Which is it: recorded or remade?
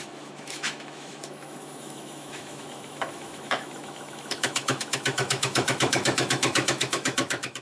remade